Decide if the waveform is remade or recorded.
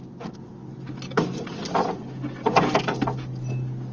recorded